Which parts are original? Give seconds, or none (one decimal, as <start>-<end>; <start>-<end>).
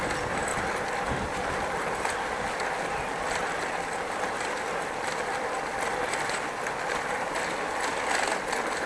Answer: none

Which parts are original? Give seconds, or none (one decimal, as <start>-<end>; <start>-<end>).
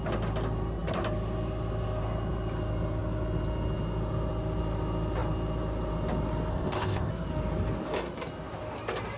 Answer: 0.0-6.5; 7.1-9.2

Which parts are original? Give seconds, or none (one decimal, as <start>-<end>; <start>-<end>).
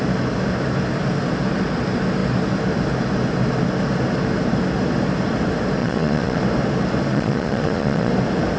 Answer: 0.0-5.8; 6.4-7.1; 8.1-8.6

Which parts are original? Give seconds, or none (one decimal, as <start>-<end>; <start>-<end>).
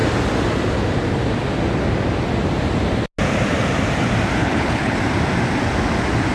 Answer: 0.0-4.4; 5.0-6.3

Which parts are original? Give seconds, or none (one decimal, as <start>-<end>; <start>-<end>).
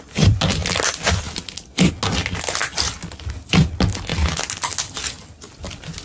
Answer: 0.0-6.0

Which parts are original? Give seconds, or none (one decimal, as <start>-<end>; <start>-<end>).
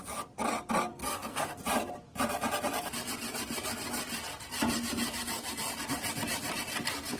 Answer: 0.0-0.9; 1.6-7.2